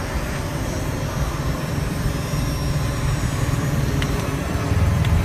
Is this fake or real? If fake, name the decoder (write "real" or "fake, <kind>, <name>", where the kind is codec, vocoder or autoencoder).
fake, vocoder, BigVGAN v2